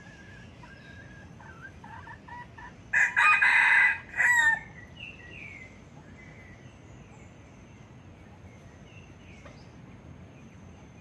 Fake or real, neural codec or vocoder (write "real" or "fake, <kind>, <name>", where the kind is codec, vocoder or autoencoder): real